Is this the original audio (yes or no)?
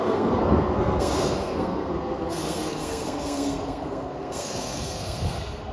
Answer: no